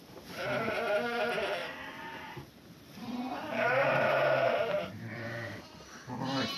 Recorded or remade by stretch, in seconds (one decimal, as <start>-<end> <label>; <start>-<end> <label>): 0.0-1.6 recorded; 1.6-5.6 remade; 5.6-6.6 recorded